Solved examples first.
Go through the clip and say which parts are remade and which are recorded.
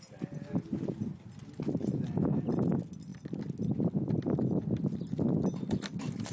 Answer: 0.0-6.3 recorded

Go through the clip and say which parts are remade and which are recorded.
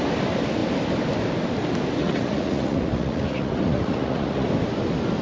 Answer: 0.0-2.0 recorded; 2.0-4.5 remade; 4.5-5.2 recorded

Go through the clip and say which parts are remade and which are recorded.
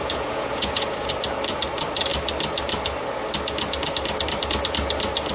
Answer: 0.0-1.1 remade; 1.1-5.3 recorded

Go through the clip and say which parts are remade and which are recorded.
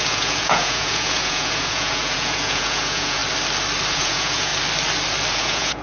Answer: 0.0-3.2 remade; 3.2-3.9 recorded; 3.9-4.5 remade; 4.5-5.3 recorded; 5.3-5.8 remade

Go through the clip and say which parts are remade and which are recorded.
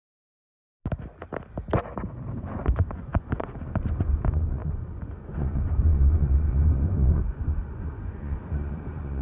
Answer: 0.0-0.7 remade; 0.7-2.4 recorded; 2.4-9.2 remade